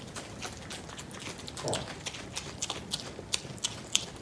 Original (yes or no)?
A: yes